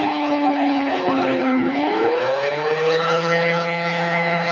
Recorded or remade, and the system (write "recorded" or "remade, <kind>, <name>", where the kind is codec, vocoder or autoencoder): remade, codec, HILCodec